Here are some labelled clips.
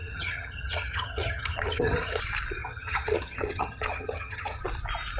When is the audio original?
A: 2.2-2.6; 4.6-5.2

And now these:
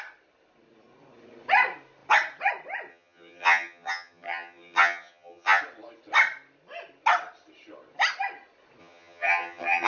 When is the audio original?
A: 0.0-2.9; 5.6-8.8

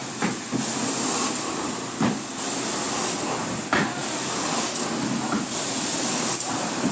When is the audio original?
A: 0.0-6.9